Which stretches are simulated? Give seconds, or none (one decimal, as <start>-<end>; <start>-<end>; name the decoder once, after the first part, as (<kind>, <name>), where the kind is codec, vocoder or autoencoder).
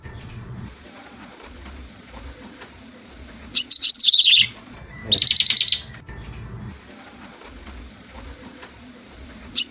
0.0-5.0 (vocoder, Vocos); 7.0-9.7